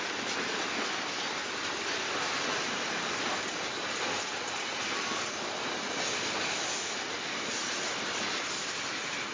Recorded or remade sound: recorded